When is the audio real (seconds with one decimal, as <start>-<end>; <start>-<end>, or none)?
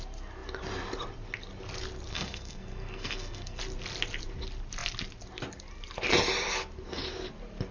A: 0.0-2.1; 3.6-7.7